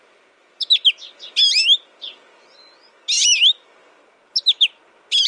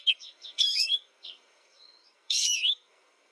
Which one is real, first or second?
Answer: first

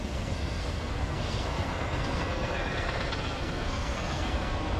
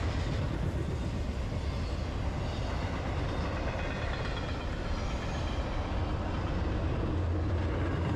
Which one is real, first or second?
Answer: second